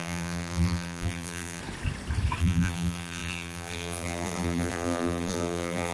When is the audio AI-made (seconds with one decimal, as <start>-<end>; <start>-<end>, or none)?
0.0-1.6; 2.4-5.9